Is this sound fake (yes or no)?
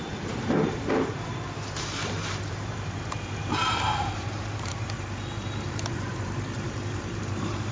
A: yes